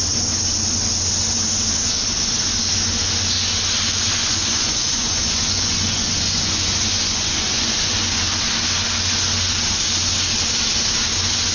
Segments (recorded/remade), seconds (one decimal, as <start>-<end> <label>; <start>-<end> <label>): 0.0-4.2 recorded; 4.2-8.2 remade; 8.2-11.5 recorded